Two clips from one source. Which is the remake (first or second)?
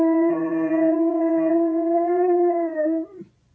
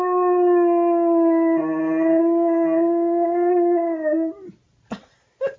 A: first